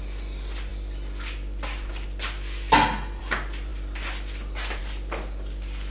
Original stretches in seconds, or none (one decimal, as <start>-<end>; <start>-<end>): 0.0-5.9

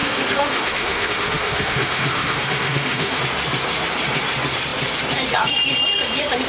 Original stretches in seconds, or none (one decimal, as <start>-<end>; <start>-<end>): 3.2-6.5